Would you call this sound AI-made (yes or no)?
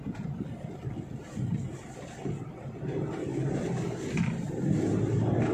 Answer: no